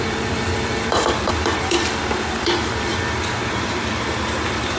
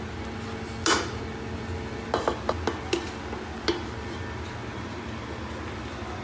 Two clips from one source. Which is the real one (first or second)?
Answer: second